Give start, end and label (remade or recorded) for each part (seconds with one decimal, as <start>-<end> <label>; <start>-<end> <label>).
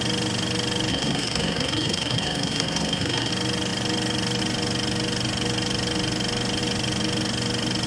0.0-0.9 recorded; 0.9-3.3 remade; 3.3-7.9 recorded